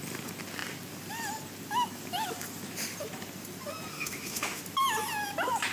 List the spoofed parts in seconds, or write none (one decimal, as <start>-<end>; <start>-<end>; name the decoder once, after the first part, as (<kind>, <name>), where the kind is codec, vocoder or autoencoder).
3.9-4.6 (autoencoder, DAC-VAE)